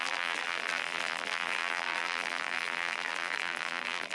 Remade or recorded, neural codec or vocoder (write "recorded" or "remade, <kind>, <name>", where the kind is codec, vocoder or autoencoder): remade, vocoder, BigVGAN v2